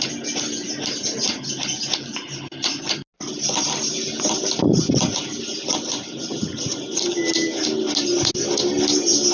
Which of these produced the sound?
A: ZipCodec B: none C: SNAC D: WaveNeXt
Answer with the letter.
B